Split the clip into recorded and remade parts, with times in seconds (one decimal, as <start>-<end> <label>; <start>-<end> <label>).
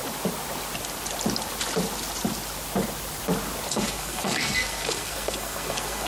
0.0-3.7 recorded; 3.7-6.1 remade